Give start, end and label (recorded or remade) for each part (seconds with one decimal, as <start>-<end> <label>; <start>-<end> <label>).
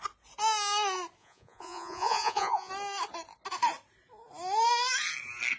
0.0-1.2 recorded; 1.2-2.7 remade; 2.7-5.6 recorded